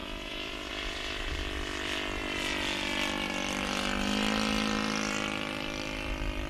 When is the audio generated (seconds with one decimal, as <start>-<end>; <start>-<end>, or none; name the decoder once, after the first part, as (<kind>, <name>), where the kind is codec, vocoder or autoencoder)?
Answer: 0.0-1.3 (vocoder, Vocos)

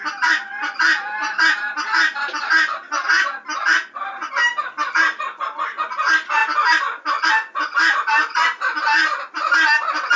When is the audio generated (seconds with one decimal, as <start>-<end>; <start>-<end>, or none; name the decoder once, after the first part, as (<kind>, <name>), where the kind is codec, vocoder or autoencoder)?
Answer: none

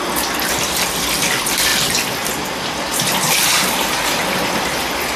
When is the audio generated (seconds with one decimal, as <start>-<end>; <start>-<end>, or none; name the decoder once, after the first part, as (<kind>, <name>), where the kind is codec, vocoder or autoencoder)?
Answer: none

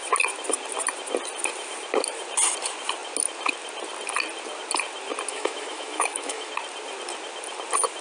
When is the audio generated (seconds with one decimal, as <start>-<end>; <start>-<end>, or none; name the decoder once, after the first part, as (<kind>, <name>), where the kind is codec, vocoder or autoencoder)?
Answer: 5.3-6.5 (autoencoder, DAC-VAE)

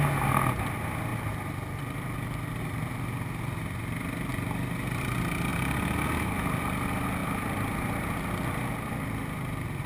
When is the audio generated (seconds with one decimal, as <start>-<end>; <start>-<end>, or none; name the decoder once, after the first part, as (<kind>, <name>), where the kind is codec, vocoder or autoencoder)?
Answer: none